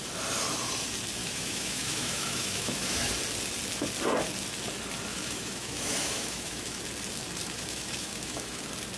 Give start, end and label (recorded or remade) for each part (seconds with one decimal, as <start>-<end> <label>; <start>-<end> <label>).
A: 0.0-1.2 recorded; 1.2-3.1 remade; 3.1-5.1 recorded; 5.1-6.8 remade; 6.8-7.4 recorded; 7.4-8.6 remade; 8.6-9.0 recorded